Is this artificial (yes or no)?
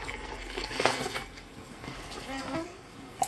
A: yes